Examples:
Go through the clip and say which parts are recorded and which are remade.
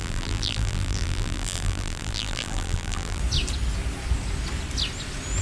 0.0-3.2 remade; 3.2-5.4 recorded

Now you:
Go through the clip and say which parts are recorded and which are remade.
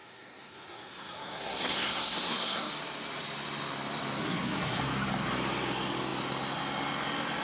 0.0-2.7 remade; 2.7-4.2 recorded; 4.2-4.8 remade; 4.8-7.4 recorded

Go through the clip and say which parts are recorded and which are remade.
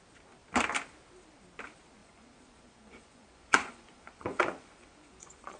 0.0-2.0 recorded; 2.0-5.6 remade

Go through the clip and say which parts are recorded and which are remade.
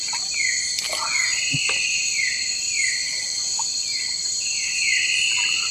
0.0-1.3 recorded; 1.3-4.7 remade; 4.7-5.7 recorded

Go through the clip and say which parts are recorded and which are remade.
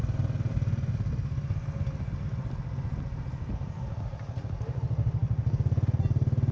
0.0-6.5 recorded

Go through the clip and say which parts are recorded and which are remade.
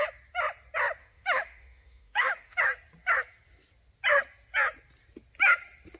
0.0-1.0 recorded; 1.0-2.6 remade; 2.6-6.0 recorded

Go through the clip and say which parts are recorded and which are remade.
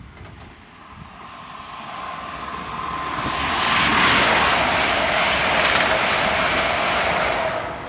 0.0-7.9 recorded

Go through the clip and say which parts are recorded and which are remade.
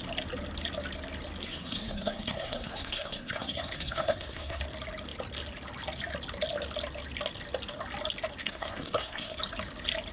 0.0-1.4 recorded; 1.4-4.6 remade; 4.6-8.4 recorded; 8.4-9.4 remade; 9.4-10.1 recorded